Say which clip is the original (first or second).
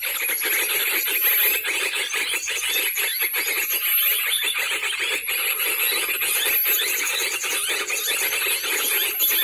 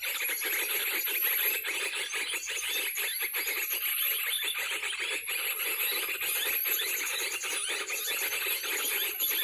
first